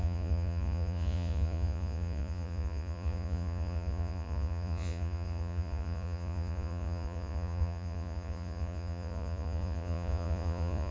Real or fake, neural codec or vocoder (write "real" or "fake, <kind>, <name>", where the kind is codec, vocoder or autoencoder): fake, vocoder, Vocos